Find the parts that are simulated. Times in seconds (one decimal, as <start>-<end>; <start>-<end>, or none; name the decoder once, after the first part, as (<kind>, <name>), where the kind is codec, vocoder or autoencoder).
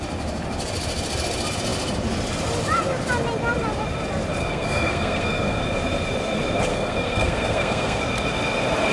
4.4-5.6 (codec, SNAC); 6.7-8.0